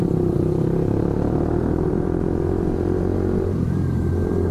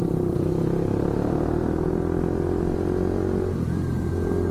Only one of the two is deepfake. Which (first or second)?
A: first